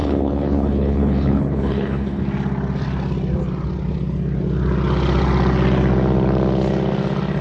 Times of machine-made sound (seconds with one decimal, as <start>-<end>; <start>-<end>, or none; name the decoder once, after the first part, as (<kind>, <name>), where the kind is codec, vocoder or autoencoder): 0.0-2.2 (codec, HILCodec)